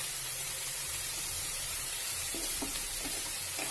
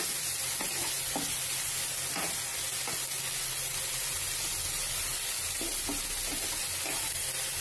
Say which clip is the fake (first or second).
first